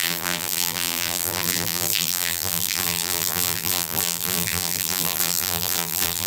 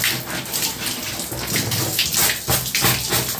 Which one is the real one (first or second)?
second